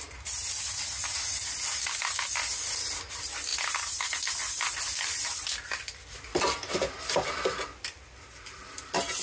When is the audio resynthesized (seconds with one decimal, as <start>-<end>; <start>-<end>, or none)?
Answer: 3.5-5.7